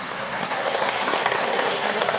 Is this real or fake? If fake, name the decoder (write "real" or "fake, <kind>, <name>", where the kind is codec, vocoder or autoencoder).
fake, codec, SNAC